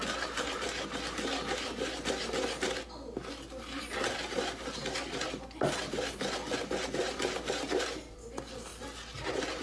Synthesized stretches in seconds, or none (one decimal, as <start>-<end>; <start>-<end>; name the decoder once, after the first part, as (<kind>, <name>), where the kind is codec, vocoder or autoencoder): none